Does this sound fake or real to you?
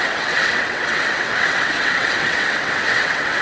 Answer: fake